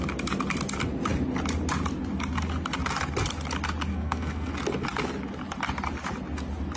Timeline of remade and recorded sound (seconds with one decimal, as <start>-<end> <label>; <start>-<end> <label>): 0.0-3.9 recorded; 3.9-4.5 remade; 4.5-6.8 recorded